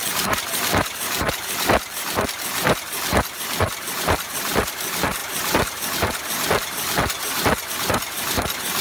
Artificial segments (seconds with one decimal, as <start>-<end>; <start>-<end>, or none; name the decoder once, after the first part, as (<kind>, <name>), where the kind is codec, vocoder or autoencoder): 0.0-2.6 (vocoder, BigVGAN v2); 3.3-5.2; 7.7-8.8